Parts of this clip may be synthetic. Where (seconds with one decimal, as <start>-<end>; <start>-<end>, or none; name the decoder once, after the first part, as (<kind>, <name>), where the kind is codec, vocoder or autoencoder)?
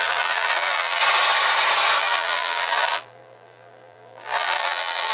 0.0-1.0 (vocoder, BigVGAN v2); 2.0-5.1